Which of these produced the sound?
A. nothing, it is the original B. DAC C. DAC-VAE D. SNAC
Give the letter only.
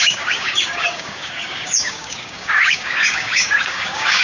B